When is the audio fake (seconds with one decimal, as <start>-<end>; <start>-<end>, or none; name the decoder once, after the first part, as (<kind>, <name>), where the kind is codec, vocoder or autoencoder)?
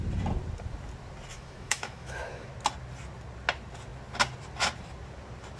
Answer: 1.3-2.5 (autoencoder, DAC-VAE)